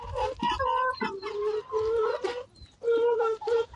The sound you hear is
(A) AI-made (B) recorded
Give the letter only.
B